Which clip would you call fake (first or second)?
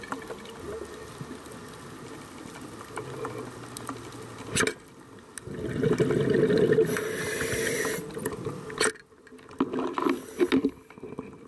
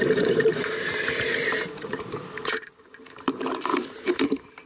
second